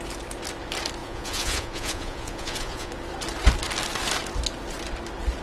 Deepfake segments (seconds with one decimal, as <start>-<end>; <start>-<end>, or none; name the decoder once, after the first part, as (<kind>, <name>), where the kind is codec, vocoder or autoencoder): 1.0-2.9 (vocoder, Vocos)